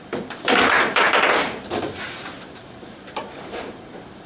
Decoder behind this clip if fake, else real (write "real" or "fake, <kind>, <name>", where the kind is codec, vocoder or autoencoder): fake, vocoder, BigVGAN v2